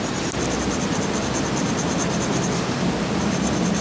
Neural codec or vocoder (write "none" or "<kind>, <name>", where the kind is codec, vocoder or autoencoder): none